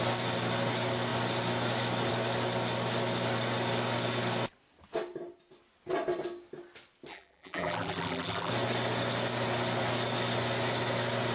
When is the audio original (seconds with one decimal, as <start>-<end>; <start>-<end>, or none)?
0.0-7.1; 8.5-11.3